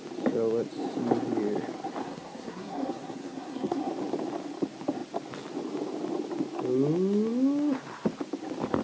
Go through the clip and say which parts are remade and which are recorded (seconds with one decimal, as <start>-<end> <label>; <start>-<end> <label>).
0.0-2.0 recorded; 2.0-3.9 remade; 3.9-8.8 recorded